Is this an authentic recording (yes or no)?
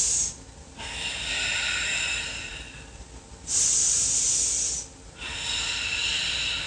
yes